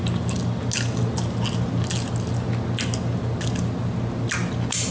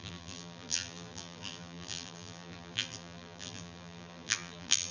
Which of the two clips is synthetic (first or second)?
second